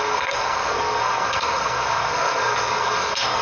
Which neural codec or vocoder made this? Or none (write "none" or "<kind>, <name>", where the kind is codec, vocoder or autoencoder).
codec, SNAC